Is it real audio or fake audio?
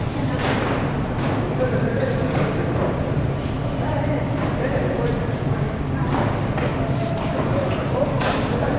fake